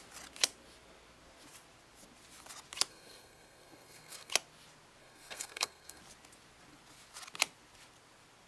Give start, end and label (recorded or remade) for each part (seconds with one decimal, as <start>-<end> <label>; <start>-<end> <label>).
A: 0.0-2.9 recorded; 2.9-4.3 remade; 4.3-5.0 recorded; 5.0-6.0 remade; 6.0-8.5 recorded